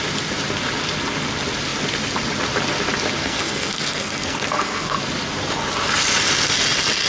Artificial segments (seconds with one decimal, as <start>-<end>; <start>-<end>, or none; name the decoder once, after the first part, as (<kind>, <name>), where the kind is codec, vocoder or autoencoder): 3.2-5.0 (codec, SNAC)